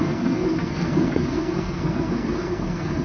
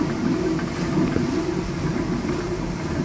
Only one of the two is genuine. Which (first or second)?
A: second